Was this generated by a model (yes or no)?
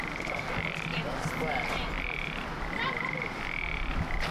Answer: no